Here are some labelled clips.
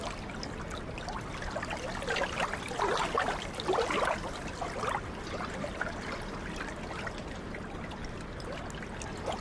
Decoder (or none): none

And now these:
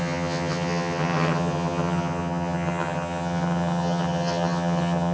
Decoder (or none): vocoder, HiFi-GAN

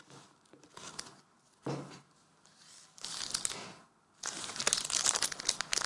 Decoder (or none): none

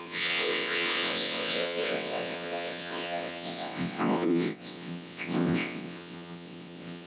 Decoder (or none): vocoder, WaveNeXt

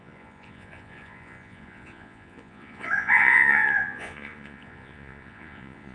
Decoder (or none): vocoder, Vocos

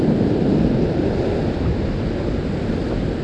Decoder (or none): none